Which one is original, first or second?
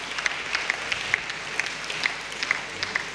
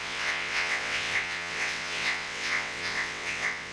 first